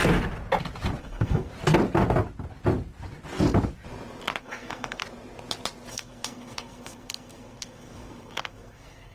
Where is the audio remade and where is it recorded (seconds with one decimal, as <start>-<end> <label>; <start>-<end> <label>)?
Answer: 0.0-1.0 recorded; 1.0-1.5 remade; 1.5-4.4 recorded; 4.4-5.0 remade; 5.0-5.9 recorded; 5.9-9.1 remade